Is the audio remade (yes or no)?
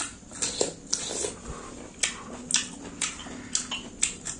no